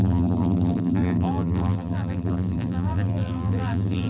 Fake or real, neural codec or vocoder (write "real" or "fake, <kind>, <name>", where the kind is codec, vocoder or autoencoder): fake, vocoder, BigVGAN v2